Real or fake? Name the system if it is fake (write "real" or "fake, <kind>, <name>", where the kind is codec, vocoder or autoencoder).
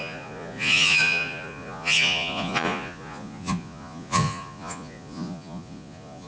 fake, vocoder, Vocos